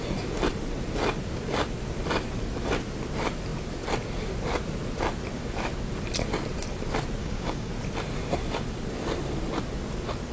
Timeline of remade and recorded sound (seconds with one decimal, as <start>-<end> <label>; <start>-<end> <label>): 0.0-7.2 recorded; 7.2-7.7 remade; 7.7-10.3 recorded